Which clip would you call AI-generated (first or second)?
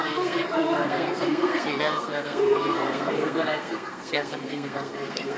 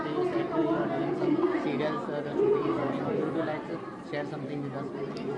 first